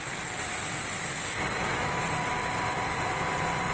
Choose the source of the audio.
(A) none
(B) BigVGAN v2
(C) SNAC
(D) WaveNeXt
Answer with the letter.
A